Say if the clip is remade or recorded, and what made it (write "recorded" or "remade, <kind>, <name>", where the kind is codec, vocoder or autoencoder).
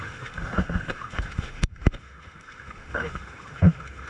remade, autoencoder, DAC-VAE